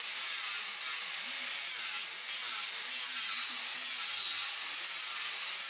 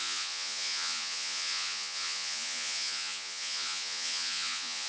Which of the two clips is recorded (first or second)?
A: first